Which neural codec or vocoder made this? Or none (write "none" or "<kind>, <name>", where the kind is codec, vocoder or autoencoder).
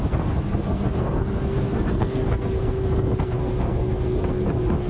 codec, SNAC